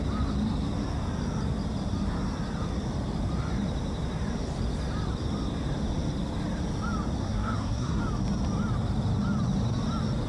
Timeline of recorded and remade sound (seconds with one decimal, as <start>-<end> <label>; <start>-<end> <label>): 0.0-7.2 recorded; 7.2-8.0 remade; 8.0-10.3 recorded